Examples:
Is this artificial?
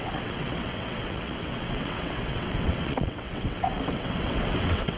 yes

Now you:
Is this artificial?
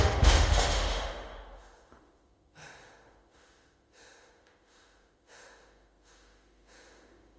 yes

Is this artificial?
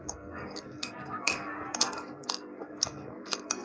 yes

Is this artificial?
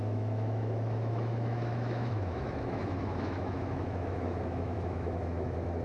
yes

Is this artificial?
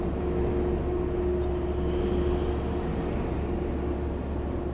no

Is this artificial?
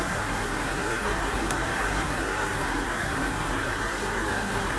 yes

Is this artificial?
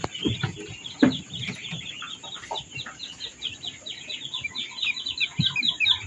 no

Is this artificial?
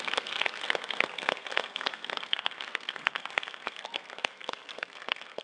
yes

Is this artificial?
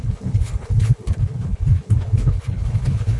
yes